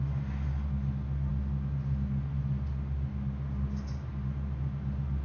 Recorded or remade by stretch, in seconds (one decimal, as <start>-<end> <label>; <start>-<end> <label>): 0.0-5.2 recorded